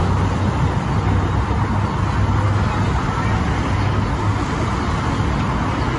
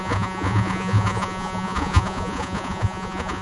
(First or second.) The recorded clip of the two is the first